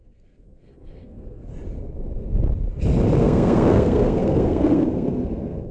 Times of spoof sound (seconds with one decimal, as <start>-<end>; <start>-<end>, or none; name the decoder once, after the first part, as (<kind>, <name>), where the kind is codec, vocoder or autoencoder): 0.0-1.5 (codec, SNAC); 3.2-5.7